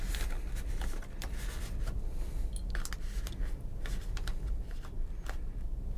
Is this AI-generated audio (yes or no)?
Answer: no